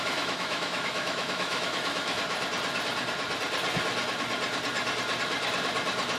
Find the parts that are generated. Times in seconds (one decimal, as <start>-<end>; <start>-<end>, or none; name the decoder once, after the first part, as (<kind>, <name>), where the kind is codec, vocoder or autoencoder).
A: 0.0-2.2 (autoencoder, DAC-VAE)